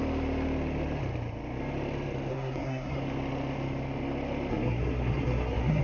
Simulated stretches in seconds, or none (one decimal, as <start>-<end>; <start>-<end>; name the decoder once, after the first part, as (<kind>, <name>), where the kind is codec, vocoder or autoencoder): 2.3-3.0 (codec, SNAC); 4.5-5.8